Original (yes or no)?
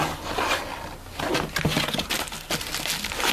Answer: yes